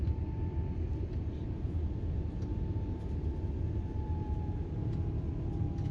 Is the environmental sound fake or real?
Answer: real